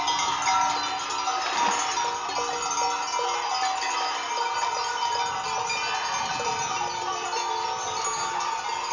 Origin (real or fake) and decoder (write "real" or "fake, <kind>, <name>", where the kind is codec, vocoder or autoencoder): real